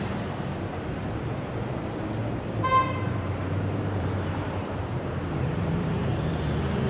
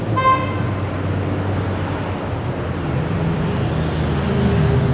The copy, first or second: first